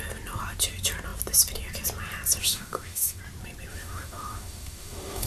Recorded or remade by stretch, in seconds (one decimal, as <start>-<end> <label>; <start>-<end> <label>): 0.0-2.4 recorded; 2.4-3.2 remade; 3.2-3.7 recorded; 3.7-5.3 remade